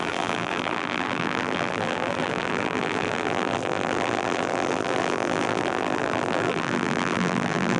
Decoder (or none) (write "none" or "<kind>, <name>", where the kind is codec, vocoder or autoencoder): vocoder, BigVGAN v2